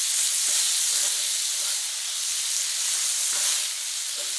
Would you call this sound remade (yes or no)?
no